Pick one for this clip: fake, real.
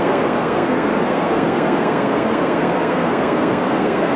fake